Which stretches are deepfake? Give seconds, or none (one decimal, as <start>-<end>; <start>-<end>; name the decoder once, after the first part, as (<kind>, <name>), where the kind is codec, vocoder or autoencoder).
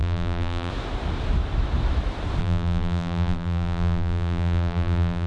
0.0-0.7 (vocoder, BigVGAN v2); 2.4-5.3